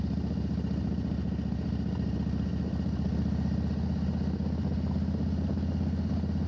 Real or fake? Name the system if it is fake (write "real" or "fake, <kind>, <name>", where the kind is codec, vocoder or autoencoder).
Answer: real